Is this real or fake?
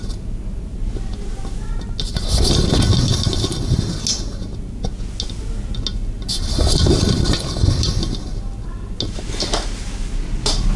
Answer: real